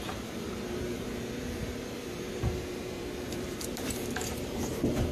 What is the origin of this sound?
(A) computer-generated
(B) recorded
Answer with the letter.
A